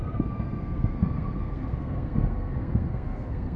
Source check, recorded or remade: remade